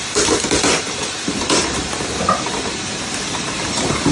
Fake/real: fake